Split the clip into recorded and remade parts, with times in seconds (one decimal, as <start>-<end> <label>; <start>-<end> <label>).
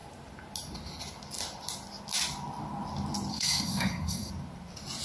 0.0-3.3 recorded; 3.3-4.3 remade; 4.3-5.0 recorded